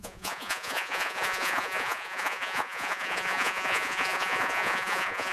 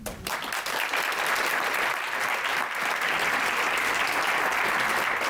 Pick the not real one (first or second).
first